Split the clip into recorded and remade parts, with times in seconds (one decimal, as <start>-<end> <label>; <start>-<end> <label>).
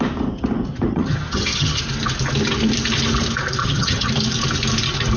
0.0-0.9 recorded; 0.9-1.8 remade; 1.8-3.6 recorded; 3.6-4.1 remade; 4.1-5.2 recorded